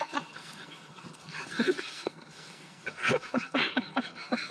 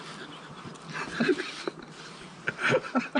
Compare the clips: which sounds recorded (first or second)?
second